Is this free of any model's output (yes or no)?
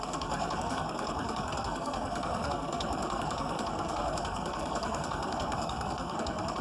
no